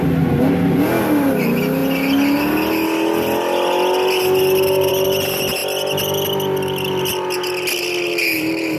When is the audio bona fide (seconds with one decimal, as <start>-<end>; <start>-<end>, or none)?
0.0-8.8